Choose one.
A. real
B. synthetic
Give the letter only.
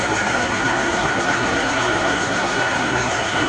B